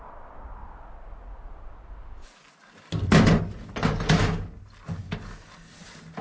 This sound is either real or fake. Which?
real